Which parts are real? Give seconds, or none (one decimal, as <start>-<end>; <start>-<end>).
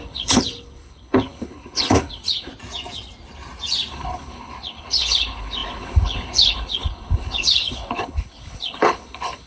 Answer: 2.5-3.9